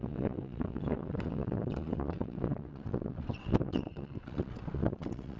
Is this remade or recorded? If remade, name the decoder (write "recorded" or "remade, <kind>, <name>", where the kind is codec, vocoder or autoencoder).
remade, vocoder, WaveNeXt